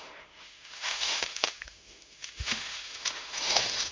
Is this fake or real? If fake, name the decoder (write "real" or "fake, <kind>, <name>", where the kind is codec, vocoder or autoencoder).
fake, autoencoder, DAC-VAE